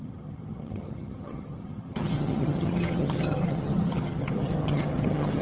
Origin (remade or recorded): remade